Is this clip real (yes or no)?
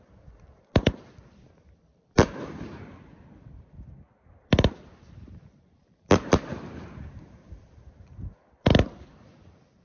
no